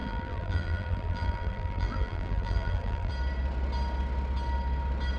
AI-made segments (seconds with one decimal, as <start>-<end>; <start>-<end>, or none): 0.0-3.1